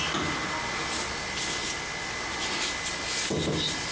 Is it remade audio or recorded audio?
recorded